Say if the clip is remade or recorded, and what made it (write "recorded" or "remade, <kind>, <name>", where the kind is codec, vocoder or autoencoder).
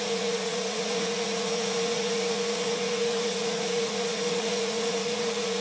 remade, vocoder, Vocos